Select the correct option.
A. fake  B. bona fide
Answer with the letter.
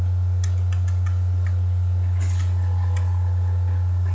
B